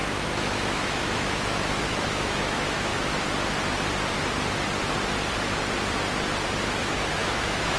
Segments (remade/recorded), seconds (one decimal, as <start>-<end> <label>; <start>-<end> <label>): 0.0-2.9 remade; 2.9-6.8 recorded; 6.8-7.8 remade